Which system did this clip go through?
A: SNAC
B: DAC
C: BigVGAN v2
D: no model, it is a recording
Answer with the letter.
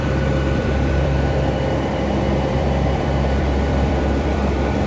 C